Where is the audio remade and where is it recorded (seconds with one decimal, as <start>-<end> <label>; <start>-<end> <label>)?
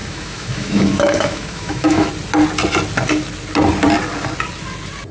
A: 0.0-2.1 remade; 2.1-5.1 recorded